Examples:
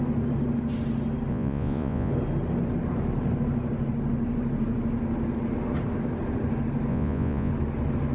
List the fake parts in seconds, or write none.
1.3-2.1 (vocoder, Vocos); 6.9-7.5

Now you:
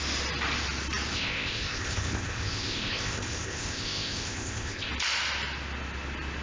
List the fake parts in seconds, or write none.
1.1-4.9 (codec, ZipCodec)

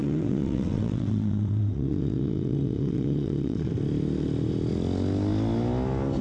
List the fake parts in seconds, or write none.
0.0-3.7 (vocoder, WaveNeXt)

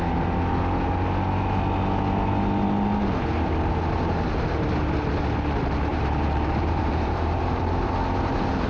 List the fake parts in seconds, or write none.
5.9-7.6 (vocoder, BigVGAN v2)

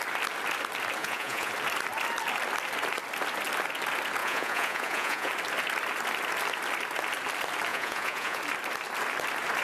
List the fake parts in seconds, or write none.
1.0-1.5 (vocoder, Vocos); 4.2-5.3; 7.7-8.4

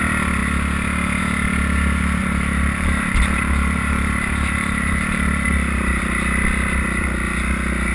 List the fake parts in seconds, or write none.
2.2-6.0 (vocoder, BigVGAN v2)

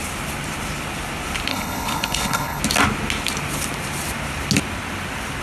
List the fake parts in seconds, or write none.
1.5-2.6 (codec, HILCodec)